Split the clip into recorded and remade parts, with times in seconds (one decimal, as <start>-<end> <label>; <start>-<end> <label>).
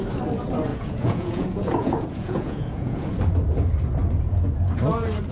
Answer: 0.0-0.7 recorded; 0.7-3.2 remade; 3.2-4.0 recorded; 4.0-4.5 remade; 4.5-5.3 recorded